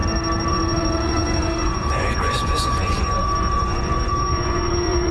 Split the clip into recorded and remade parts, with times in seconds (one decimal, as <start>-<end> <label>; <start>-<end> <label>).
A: 0.0-0.5 recorded; 0.5-5.1 remade